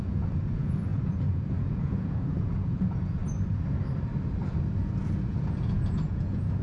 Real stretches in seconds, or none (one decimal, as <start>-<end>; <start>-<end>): 3.2-4.8